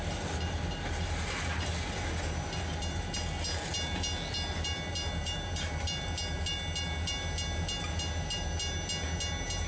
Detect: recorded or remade recorded